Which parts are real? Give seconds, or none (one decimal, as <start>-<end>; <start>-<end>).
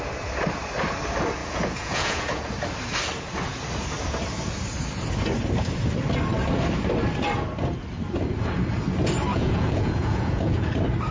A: 0.0-1.4; 2.4-9.3; 10.7-11.1